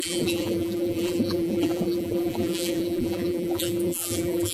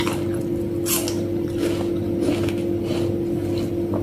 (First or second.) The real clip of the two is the second